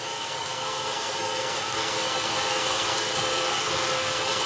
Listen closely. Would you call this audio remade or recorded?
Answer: remade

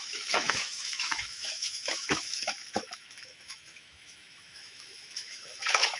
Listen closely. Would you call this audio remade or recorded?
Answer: remade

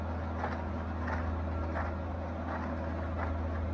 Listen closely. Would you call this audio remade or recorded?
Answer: recorded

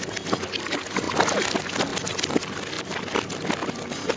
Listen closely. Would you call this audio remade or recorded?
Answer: recorded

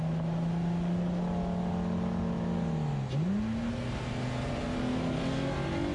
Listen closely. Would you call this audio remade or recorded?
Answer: recorded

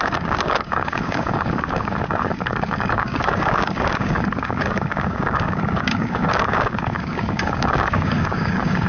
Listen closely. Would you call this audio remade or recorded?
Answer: remade